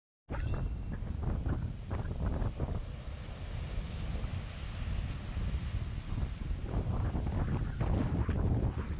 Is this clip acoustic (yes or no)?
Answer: yes